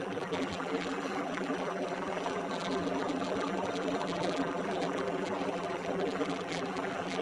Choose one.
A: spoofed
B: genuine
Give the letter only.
A